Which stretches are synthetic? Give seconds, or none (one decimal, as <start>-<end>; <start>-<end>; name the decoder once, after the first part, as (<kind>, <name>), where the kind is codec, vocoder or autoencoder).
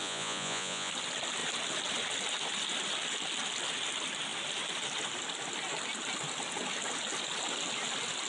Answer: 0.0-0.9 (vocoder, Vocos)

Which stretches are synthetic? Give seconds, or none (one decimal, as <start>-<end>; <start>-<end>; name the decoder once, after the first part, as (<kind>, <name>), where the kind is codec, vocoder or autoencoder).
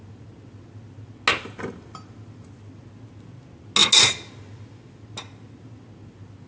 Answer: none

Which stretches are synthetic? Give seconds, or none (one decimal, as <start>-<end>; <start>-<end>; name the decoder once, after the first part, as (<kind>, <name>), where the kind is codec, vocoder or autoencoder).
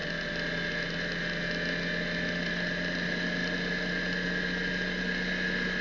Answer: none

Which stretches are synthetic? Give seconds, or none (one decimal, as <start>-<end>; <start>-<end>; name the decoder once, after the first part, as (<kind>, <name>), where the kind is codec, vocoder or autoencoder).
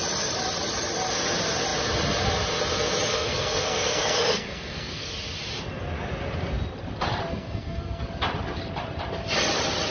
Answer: 3.1-5.1 (codec, SNAC); 7.3-8.0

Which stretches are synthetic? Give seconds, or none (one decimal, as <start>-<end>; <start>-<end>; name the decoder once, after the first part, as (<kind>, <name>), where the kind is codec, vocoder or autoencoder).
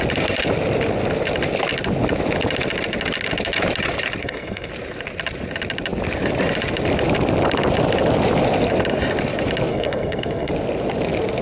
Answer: 4.2-4.7 (codec, SNAC); 9.7-10.5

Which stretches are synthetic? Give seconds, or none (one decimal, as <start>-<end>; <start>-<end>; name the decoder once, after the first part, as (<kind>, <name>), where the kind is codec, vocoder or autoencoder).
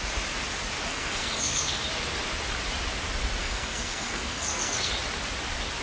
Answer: 0.9-1.8 (codec, SNAC); 3.4-4.9